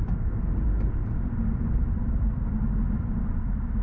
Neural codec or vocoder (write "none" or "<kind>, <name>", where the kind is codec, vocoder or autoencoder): vocoder, BigVGAN v2